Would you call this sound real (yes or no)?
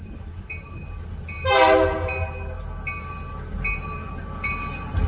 yes